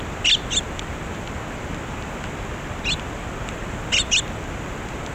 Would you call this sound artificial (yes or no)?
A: no